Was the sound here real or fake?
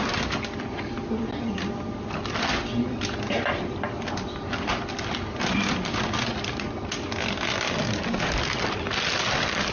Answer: real